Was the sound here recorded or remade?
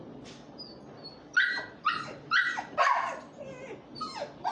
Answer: recorded